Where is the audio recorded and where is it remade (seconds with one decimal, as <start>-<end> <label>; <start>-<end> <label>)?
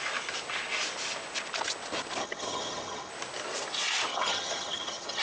0.0-2.2 recorded; 2.2-3.1 remade; 3.1-4.1 recorded; 4.1-5.2 remade